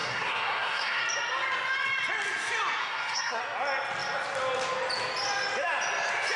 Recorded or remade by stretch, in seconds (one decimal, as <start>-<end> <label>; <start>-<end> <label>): 0.0-1.0 remade; 1.0-2.8 recorded; 2.8-3.4 remade; 3.4-6.4 recorded